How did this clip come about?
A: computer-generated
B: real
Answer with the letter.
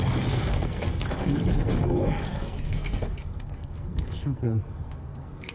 A